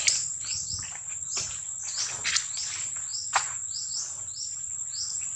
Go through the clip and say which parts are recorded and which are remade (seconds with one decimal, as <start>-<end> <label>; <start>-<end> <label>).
0.0-5.4 recorded